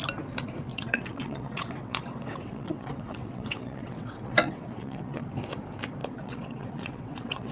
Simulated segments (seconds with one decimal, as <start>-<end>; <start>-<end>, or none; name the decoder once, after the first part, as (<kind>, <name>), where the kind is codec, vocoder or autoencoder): 0.7-5.2 (vocoder, WaveNeXt); 6.0-7.5